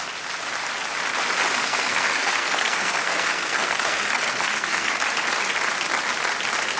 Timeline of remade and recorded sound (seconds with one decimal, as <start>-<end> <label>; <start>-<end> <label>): 0.0-1.6 recorded; 1.6-4.9 remade; 4.9-6.8 recorded

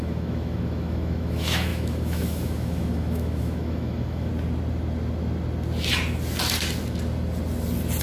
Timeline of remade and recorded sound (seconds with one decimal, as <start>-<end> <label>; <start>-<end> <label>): 0.0-4.3 remade; 4.3-8.0 recorded

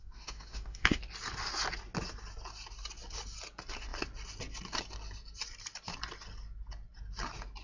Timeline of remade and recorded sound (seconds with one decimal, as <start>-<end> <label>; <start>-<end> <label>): 0.0-1.0 remade; 1.0-7.6 recorded

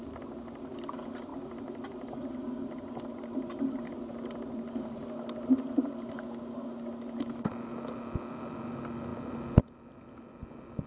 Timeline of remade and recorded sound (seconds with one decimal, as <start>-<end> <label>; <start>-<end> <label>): 0.0-10.9 recorded

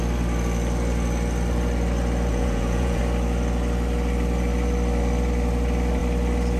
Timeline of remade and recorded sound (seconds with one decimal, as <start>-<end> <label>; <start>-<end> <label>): 0.0-2.3 recorded; 2.3-3.0 remade; 3.0-6.6 recorded

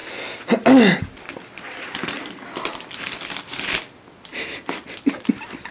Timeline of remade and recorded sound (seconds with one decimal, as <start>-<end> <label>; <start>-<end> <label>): 0.0-5.7 recorded

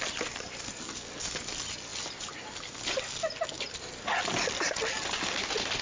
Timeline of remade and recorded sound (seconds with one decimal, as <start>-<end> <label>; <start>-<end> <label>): 0.0-5.8 recorded